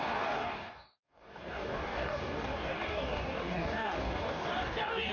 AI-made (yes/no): yes